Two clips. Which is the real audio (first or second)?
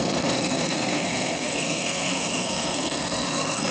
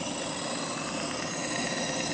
second